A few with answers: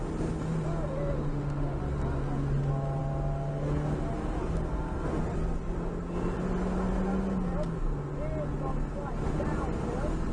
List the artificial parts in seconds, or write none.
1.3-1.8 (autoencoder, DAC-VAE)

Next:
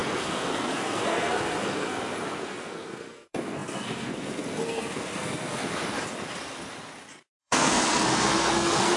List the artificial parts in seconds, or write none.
0.0-5.8 (codec, SNAC); 7.4-9.0

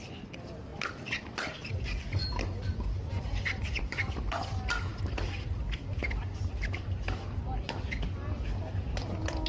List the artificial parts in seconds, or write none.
0.7-1.7 (vocoder, BigVGAN v2); 2.7-3.9

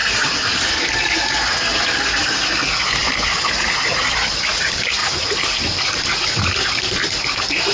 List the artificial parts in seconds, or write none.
2.9-5.0 (vocoder, BigVGAN v2); 6.7-7.7

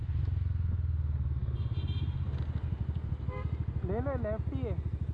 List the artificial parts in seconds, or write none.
none

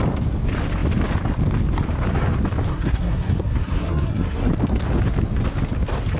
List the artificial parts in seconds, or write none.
2.7-4.5 (codec, SNAC)